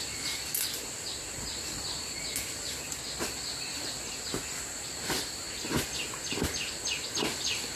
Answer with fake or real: real